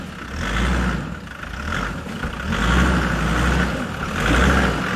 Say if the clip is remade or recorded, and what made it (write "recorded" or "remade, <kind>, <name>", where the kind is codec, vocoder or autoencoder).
recorded